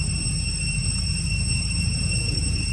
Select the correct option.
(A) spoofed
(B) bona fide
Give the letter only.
A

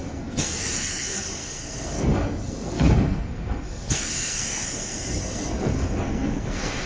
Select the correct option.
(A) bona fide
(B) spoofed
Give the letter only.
B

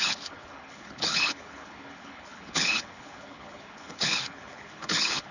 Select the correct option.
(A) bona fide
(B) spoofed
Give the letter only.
B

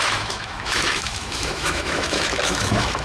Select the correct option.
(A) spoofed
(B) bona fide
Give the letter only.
A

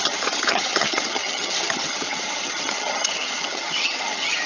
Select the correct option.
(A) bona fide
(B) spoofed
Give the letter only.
B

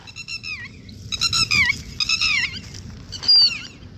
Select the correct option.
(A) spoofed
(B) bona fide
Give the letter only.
B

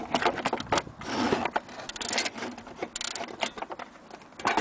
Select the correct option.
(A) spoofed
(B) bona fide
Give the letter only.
B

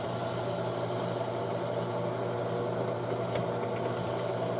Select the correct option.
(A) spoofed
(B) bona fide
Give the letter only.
B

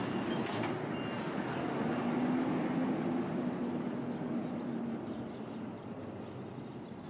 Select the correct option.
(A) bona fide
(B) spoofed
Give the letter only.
A